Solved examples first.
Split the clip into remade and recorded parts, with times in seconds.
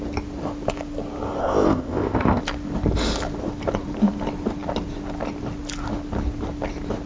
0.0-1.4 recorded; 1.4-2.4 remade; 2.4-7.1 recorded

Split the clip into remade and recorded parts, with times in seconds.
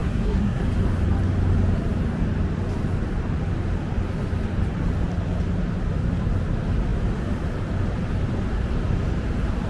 0.0-0.6 remade; 0.6-9.7 recorded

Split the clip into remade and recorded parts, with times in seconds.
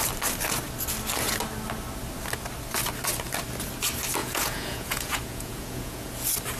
0.0-4.2 recorded; 4.2-6.1 remade; 6.1-6.6 recorded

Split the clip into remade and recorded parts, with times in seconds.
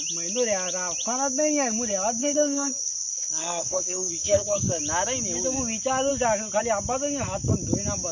0.0-2.2 recorded; 2.2-4.7 remade; 4.7-8.1 recorded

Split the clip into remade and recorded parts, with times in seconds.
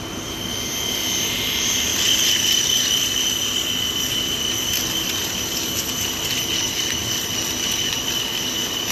0.0-8.9 recorded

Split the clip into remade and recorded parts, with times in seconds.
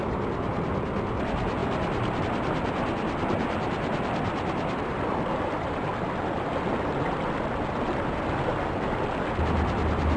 0.0-4.3 recorded; 4.3-5.9 remade; 5.9-10.2 recorded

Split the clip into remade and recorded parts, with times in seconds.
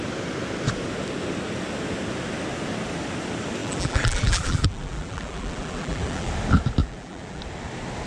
0.0-3.6 recorded; 3.6-6.3 remade; 6.3-6.8 recorded; 6.8-7.4 remade; 7.4-8.1 recorded